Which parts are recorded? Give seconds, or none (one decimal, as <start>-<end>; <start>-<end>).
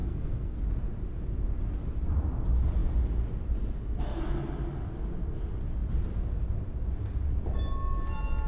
0.6-8.5